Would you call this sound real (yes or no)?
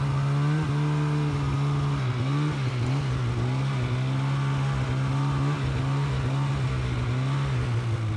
yes